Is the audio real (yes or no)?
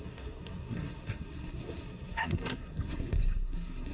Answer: no